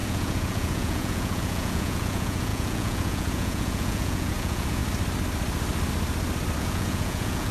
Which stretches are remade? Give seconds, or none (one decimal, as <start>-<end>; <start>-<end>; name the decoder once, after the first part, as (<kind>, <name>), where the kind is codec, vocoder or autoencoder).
0.0-4.8 (vocoder, Vocos); 6.6-7.5